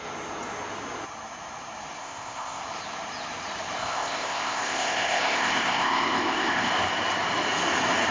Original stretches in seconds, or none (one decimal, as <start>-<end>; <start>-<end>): 0.0-2.0; 2.6-3.8; 6.7-8.1